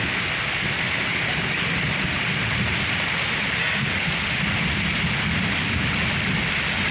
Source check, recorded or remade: recorded